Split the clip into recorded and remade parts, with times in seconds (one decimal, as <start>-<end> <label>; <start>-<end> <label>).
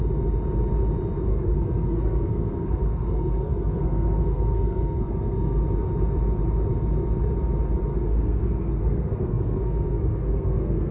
0.0-1.3 recorded; 1.3-5.6 remade; 5.6-7.9 recorded; 7.9-10.9 remade